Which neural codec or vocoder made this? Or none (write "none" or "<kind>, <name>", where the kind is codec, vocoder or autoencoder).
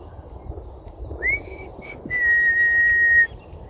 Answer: none